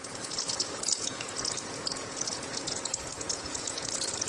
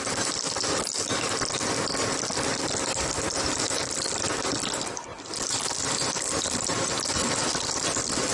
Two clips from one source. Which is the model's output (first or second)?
first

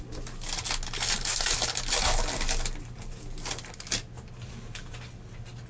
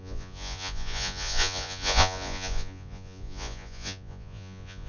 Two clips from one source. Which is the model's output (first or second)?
second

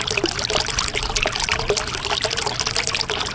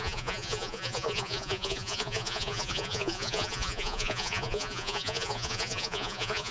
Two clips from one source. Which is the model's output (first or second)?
second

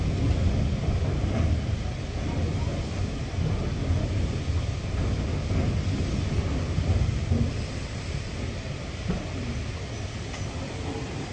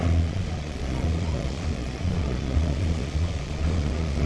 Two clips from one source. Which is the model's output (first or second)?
second